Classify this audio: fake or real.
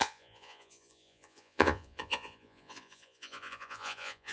fake